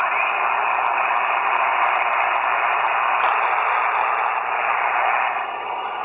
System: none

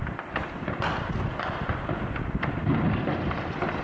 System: none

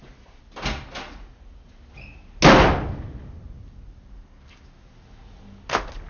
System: none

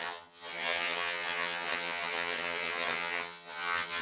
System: vocoder, HiFi-GAN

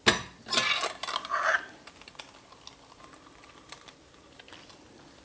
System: none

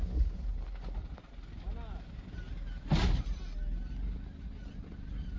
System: none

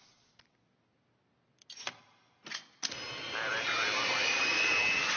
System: none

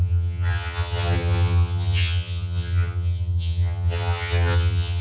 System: vocoder, HiFi-GAN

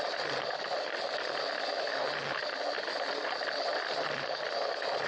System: none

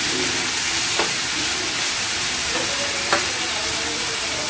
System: none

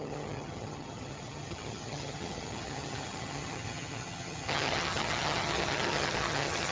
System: vocoder, HiFi-GAN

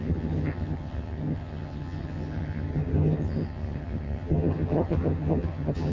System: vocoder, HiFi-GAN